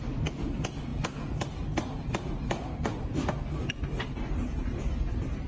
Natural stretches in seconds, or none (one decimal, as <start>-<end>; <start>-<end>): 0.0-5.5